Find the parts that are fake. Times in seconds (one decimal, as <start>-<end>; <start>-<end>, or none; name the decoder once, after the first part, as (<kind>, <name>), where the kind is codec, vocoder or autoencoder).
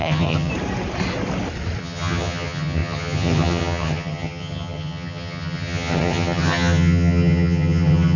0.0-0.5 (vocoder, HiFi-GAN); 1.8-8.2